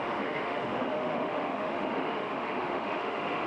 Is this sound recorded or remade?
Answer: remade